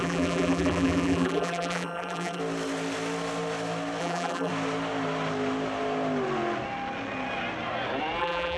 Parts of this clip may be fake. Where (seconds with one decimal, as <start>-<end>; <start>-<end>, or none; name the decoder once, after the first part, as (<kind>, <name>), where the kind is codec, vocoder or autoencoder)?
0.0-2.4 (vocoder, BigVGAN v2); 4.0-4.5; 8.2-8.6